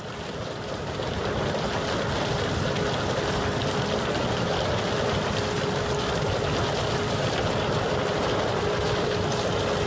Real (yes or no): yes